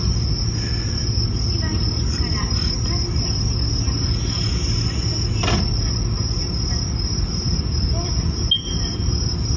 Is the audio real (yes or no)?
yes